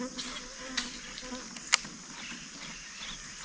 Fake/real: real